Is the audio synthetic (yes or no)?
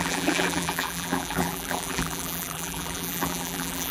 yes